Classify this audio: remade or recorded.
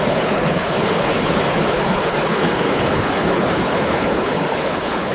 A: remade